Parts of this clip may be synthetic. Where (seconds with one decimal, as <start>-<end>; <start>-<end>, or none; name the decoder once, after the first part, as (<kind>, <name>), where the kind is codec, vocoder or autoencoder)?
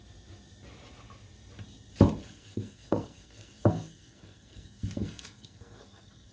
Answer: 2.2-6.3 (codec, SNAC)